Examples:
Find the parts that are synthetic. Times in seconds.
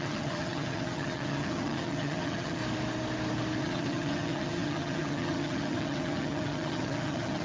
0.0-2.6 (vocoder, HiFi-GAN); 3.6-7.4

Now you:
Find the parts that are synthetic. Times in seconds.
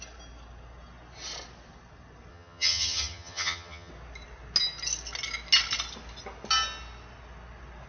2.3-3.9 (vocoder, HiFi-GAN)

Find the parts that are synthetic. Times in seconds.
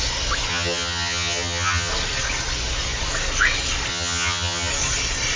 0.5-1.9 (vocoder, HiFi-GAN); 3.9-4.7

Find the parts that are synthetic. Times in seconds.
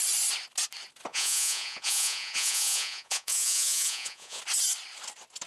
1.1-4.4 (vocoder, Vocos)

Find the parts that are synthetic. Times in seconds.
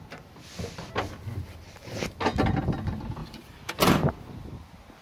3.2-4.1 (vocoder, BigVGAN v2)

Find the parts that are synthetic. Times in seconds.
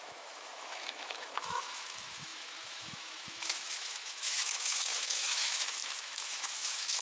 0.0-7.0 (autoencoder, DAC-VAE)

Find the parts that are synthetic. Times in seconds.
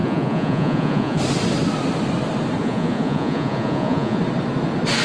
0.0-1.2 (vocoder, Vocos); 2.6-4.2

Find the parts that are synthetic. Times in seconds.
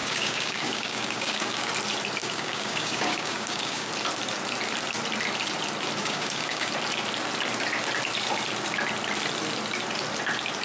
0.0-1.7 (codec, DAC); 2.2-3.9; 6.0-6.7